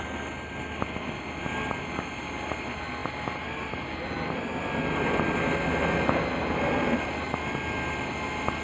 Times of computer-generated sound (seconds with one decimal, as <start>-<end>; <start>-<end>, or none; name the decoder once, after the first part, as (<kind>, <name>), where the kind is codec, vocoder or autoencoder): none